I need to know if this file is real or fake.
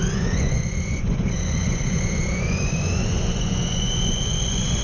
fake